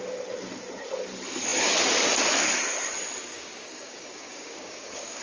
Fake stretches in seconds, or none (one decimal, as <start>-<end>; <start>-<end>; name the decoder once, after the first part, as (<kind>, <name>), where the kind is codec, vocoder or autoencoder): 3.2-5.2 (codec, DAC)